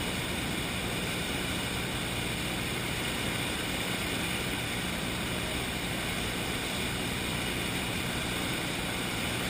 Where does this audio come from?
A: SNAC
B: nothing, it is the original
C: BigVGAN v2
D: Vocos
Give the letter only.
C